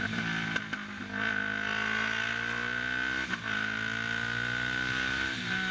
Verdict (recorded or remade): recorded